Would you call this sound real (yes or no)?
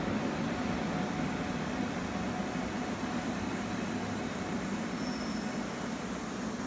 yes